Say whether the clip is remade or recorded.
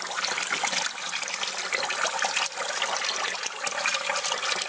recorded